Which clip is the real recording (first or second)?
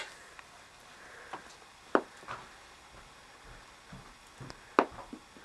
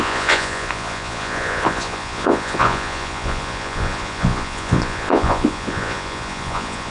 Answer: first